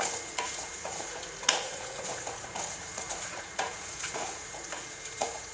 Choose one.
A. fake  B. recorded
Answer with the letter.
A